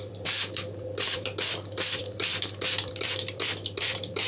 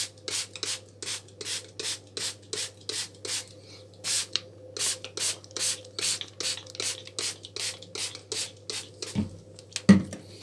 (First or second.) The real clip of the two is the second